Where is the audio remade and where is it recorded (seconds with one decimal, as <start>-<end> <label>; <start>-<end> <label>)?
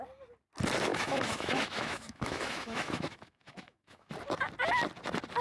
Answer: 0.0-0.9 recorded; 0.9-4.1 remade; 4.1-5.4 recorded